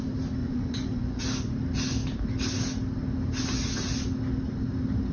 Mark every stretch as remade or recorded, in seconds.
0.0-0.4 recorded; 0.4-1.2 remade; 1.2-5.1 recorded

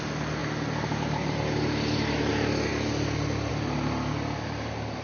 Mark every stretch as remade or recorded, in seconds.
0.0-5.0 recorded

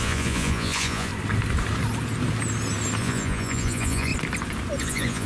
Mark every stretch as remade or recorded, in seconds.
0.0-1.1 remade; 1.1-3.0 recorded; 3.0-4.1 remade; 4.1-4.8 recorded; 4.8-5.3 remade

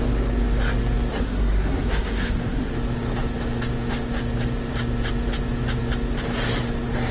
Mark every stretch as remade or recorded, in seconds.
0.0-1.1 recorded; 1.1-2.7 remade; 2.7-7.1 recorded